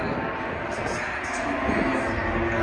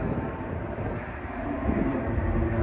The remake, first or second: second